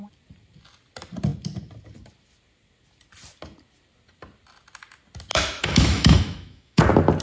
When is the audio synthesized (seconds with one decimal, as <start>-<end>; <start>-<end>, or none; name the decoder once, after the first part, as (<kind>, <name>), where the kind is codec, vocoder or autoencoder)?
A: 5.3-6.8 (autoencoder, DAC-VAE)